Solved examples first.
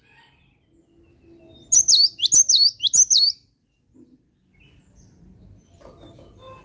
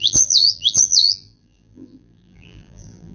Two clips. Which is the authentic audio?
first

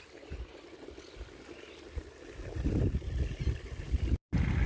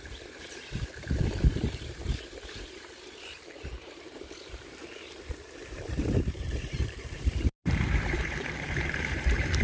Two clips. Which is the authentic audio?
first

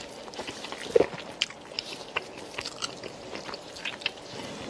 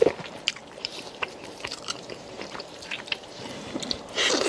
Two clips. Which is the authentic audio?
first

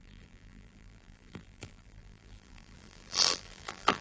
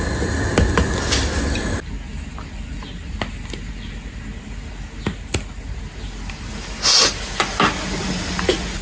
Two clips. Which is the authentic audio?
second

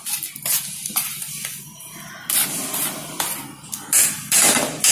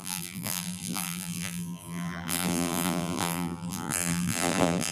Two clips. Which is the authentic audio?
first